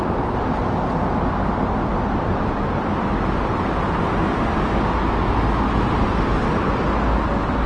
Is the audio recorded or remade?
recorded